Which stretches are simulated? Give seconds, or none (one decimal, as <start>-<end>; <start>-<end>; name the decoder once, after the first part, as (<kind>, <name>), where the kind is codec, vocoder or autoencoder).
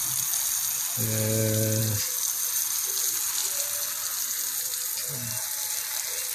none